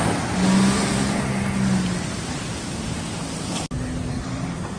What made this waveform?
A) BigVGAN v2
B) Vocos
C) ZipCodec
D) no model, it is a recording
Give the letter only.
D